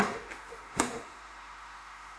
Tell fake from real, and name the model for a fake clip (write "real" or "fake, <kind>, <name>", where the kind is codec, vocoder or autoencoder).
fake, autoencoder, DAC-VAE